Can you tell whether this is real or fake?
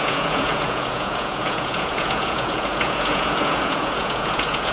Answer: fake